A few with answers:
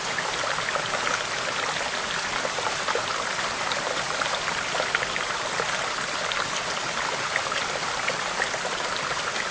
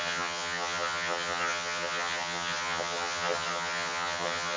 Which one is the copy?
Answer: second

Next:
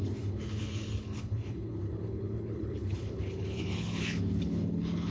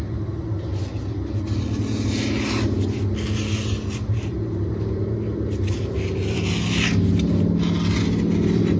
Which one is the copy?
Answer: first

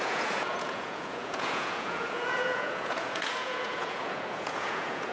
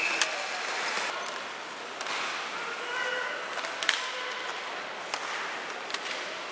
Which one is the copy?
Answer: first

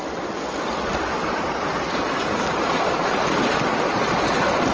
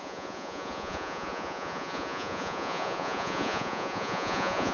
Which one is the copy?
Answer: second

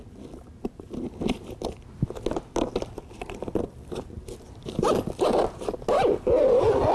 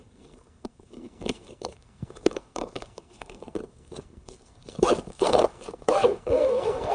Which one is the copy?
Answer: second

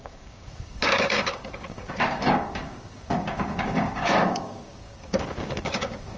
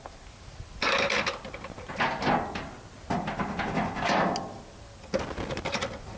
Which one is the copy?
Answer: first